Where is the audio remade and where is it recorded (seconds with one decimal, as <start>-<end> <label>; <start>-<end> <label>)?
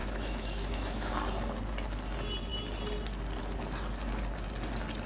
0.0-1.1 remade; 1.1-5.1 recorded